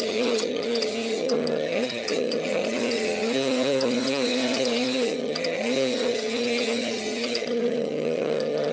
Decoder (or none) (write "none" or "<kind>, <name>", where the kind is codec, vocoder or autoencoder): vocoder, HiFi-GAN